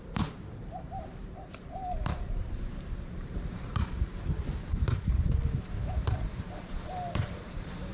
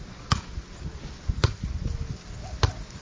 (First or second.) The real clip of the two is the second